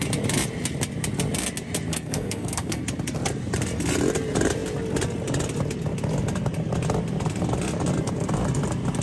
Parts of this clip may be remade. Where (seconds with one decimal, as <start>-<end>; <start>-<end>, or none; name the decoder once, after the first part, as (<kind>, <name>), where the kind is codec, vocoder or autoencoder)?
1.9-2.8 (codec, SNAC)

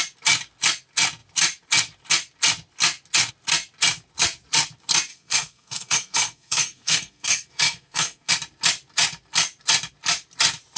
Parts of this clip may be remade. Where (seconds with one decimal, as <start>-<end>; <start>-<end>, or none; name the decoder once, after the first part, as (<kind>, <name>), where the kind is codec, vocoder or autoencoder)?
5.1-8.3 (codec, SNAC)